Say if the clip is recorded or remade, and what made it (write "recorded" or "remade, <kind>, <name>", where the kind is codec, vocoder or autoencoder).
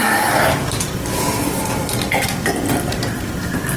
recorded